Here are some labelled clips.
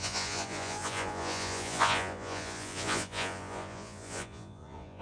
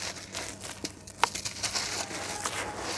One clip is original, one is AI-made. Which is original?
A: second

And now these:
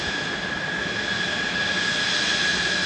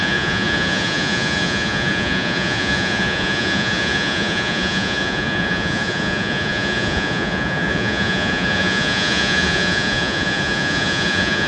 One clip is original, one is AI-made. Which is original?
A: first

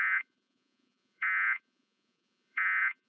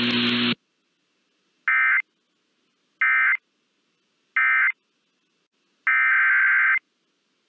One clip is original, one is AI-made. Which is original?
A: second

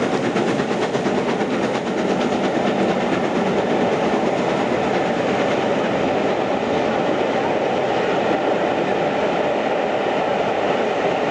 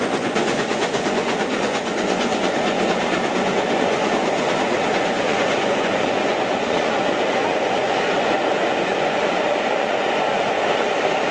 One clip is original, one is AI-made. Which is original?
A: first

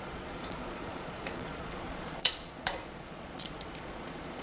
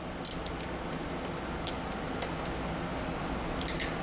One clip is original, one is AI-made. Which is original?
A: second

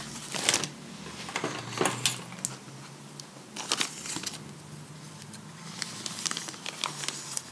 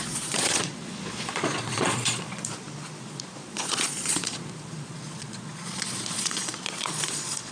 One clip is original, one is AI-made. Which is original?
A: first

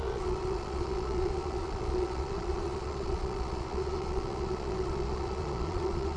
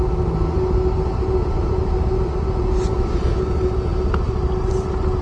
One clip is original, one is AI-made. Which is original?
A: second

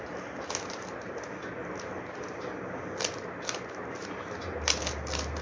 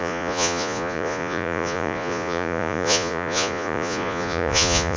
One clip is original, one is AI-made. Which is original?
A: first